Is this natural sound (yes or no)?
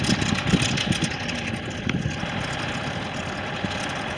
yes